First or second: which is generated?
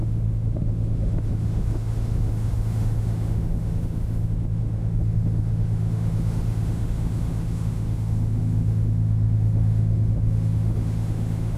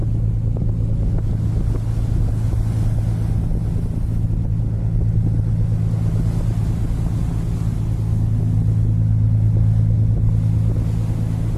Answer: first